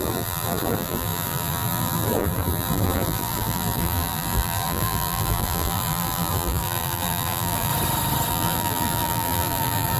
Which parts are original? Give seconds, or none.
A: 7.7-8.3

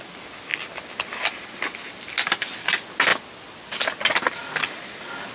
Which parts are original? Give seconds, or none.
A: 0.0-5.3

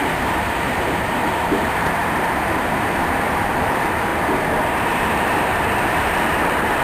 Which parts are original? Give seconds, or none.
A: 4.1-4.8

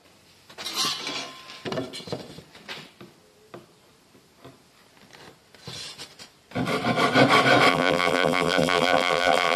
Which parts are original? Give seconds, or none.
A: 0.0-7.7